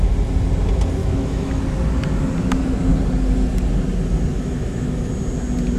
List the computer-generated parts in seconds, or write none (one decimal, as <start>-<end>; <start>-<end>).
1.0-1.6; 4.3-5.1